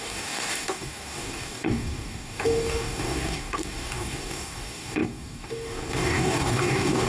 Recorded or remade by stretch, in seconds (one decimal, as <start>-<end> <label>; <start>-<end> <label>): 0.0-7.1 remade